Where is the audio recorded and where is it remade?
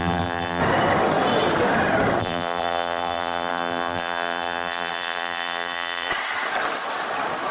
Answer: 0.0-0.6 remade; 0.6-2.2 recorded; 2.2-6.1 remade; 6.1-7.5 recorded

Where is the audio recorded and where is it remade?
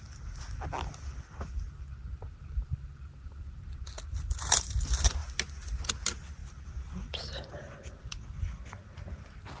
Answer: 0.0-9.6 recorded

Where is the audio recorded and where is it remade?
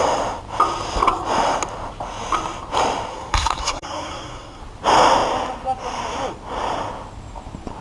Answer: 0.0-3.1 recorded; 3.1-4.6 remade; 4.6-7.8 recorded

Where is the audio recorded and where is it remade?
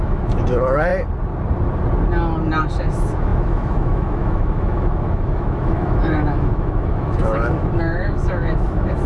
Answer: 0.0-0.9 remade; 0.9-2.6 recorded; 2.6-9.1 remade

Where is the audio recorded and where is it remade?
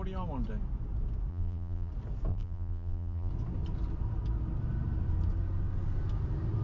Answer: 0.0-1.3 recorded; 1.3-1.9 remade; 1.9-2.3 recorded; 2.3-3.3 remade; 3.3-6.6 recorded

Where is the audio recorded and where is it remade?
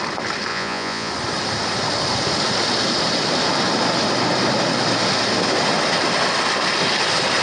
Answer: 0.0-0.5 recorded; 0.5-1.1 remade; 1.1-7.4 recorded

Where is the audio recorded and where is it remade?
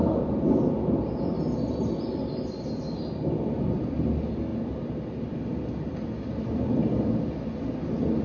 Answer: 0.0-8.2 recorded